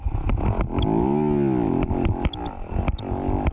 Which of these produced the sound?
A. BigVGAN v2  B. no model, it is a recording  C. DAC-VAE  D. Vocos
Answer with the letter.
B